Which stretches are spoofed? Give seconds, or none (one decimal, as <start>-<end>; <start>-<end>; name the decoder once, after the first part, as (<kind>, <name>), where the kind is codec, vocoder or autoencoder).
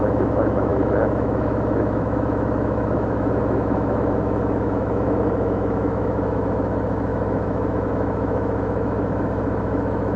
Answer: 0.0-10.2 (autoencoder, DAC-VAE)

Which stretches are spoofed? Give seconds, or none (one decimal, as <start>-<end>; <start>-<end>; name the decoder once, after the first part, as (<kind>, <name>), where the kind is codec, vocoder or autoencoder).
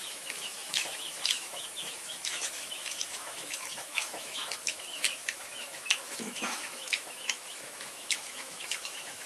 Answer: 0.0-9.3 (autoencoder, DAC-VAE)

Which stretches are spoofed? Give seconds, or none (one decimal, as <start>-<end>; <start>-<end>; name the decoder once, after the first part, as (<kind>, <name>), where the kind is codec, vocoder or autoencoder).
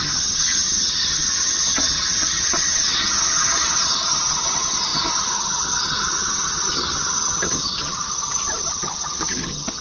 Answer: 0.0-9.8 (vocoder, HiFi-GAN)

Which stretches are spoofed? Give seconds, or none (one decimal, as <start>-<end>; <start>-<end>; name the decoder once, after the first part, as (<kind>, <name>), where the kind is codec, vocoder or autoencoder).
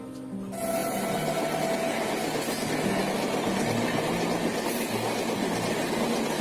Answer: none